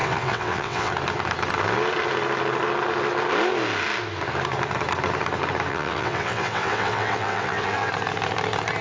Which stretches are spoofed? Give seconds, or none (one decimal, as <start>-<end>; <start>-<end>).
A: 0.0-0.9; 5.7-7.9